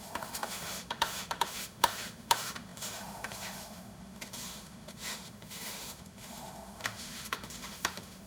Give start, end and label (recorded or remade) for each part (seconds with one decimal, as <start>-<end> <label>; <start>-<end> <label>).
0.0-8.3 remade